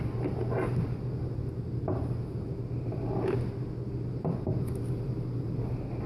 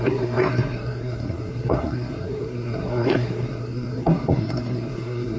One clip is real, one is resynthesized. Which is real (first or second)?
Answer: first